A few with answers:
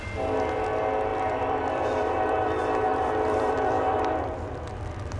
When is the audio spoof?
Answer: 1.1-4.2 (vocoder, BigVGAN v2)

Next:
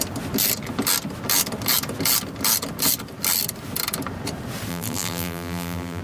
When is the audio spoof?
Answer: 4.7-6.0 (vocoder, BigVGAN v2)